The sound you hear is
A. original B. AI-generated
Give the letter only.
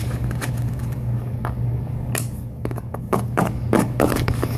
B